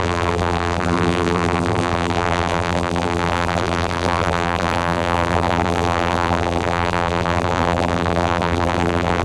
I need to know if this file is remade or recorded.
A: remade